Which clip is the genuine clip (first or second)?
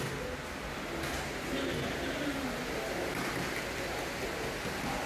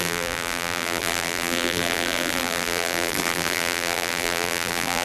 first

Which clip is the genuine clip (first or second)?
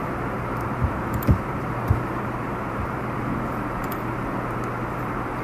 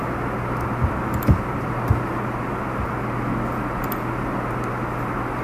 second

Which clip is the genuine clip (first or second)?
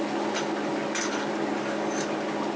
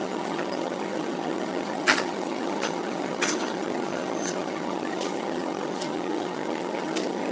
first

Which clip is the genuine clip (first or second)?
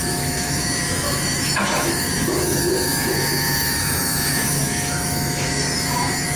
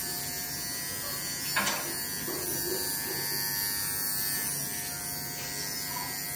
second